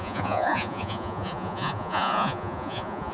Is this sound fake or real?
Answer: fake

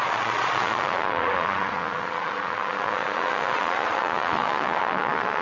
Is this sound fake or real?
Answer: fake